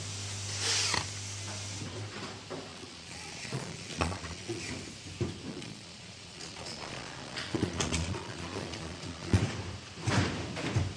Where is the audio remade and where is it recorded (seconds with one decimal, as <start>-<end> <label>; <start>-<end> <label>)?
0.0-2.7 recorded; 2.7-4.6 remade; 4.6-5.5 recorded; 5.5-9.4 remade; 9.4-11.0 recorded